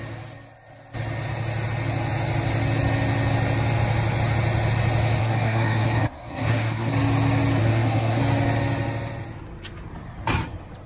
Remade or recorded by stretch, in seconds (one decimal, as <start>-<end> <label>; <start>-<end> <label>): 0.0-5.2 recorded; 5.2-6.9 remade; 6.9-7.6 recorded; 7.6-8.2 remade; 8.2-10.9 recorded